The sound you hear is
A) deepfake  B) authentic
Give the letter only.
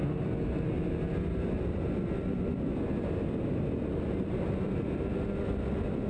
B